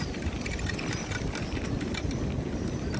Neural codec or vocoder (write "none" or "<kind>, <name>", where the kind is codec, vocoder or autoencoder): none